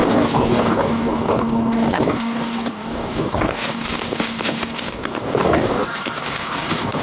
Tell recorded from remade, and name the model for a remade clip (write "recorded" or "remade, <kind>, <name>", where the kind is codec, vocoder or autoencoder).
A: remade, codec, DAC